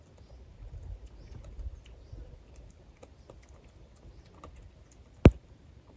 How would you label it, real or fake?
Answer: real